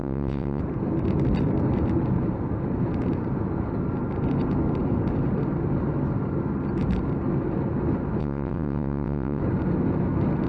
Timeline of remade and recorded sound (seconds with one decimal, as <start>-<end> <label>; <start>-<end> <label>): 0.0-0.6 remade; 0.6-8.2 recorded; 8.2-9.4 remade; 9.4-10.5 recorded

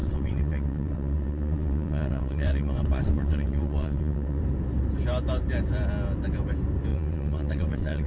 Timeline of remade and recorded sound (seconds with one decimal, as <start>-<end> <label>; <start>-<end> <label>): 0.0-4.4 remade; 4.4-6.9 recorded; 6.9-8.1 remade

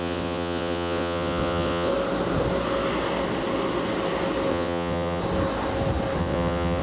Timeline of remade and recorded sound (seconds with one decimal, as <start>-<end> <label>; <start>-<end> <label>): 0.0-1.9 remade; 1.9-4.5 recorded; 4.5-5.2 remade; 5.2-6.2 recorded; 6.2-6.8 remade

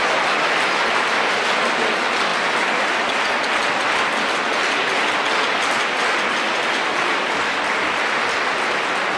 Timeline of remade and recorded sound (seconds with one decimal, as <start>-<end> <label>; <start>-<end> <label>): 0.0-9.2 recorded

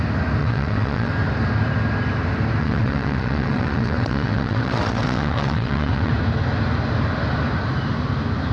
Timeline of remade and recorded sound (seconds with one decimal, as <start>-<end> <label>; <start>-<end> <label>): 0.0-0.4 recorded; 0.4-1.1 remade; 1.1-2.6 recorded; 2.6-6.1 remade; 6.1-8.5 recorded

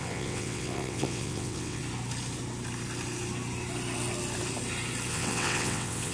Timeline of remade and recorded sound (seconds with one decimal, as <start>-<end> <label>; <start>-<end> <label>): 0.0-1.8 remade; 1.8-5.1 recorded; 5.1-6.1 remade